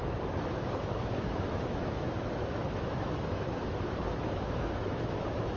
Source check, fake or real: fake